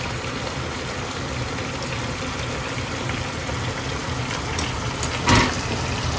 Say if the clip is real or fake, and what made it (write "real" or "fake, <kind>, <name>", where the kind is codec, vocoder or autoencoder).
real